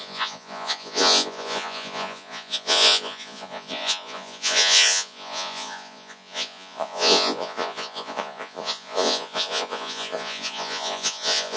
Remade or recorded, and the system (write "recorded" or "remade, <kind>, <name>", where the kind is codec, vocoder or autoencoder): remade, vocoder, Vocos